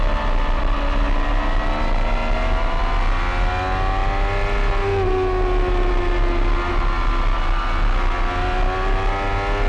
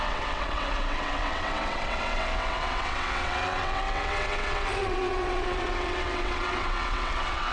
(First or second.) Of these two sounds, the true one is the first